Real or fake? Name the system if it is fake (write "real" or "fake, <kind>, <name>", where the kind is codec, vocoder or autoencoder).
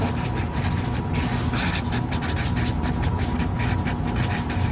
real